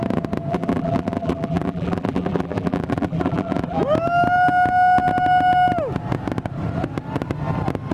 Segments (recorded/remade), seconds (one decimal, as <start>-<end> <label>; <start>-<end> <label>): 0.0-0.5 recorded; 0.5-3.8 remade; 3.8-7.9 recorded